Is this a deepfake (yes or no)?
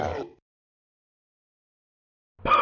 no